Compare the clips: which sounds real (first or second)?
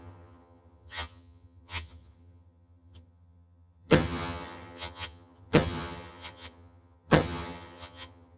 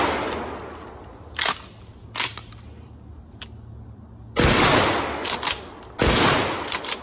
second